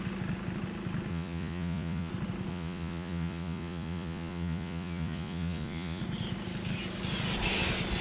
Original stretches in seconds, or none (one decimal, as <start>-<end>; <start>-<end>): 0.0-1.1; 2.1-2.5; 6.0-8.0